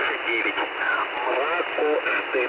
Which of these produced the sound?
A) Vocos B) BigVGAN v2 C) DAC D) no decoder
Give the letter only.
D